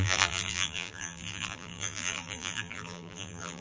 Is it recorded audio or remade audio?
remade